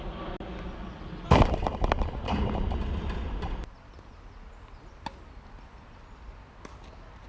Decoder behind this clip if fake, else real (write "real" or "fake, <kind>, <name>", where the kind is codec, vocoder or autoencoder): real